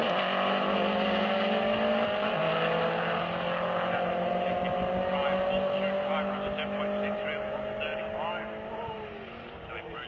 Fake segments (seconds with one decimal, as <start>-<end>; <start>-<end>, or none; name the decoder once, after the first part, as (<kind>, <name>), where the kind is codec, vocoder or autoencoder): none